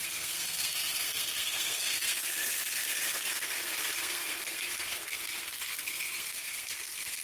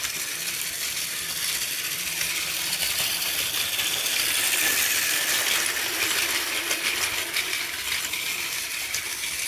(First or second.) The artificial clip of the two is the first